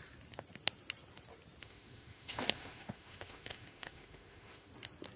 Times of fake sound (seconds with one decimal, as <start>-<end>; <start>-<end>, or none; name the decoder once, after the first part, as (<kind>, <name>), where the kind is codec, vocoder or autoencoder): 1.6-4.7 (autoencoder, DAC-VAE)